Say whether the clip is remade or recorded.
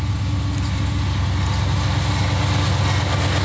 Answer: recorded